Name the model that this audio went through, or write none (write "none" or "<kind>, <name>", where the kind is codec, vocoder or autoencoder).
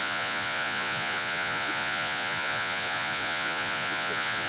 vocoder, Vocos